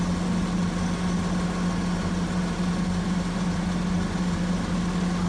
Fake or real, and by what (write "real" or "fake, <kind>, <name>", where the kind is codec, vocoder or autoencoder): real